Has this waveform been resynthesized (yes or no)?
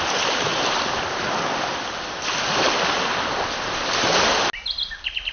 no